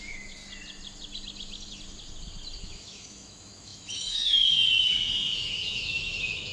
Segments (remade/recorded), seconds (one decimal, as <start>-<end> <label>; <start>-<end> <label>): 0.0-0.4 remade; 0.4-2.6 recorded; 2.6-6.5 remade